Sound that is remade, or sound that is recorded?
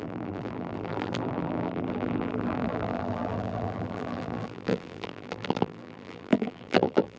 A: remade